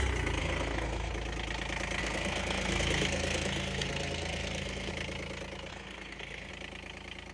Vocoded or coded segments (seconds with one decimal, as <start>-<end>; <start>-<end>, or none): 0.4-1.1; 2.0-4.9; 5.7-6.5